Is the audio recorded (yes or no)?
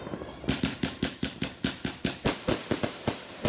yes